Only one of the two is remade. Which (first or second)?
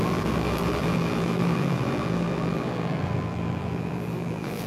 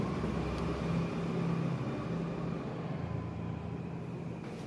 first